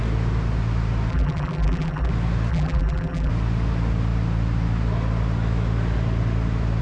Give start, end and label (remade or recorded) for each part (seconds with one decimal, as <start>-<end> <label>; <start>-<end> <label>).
0.0-1.1 recorded; 1.1-2.1 remade; 2.1-2.5 recorded; 2.5-3.3 remade; 3.3-6.8 recorded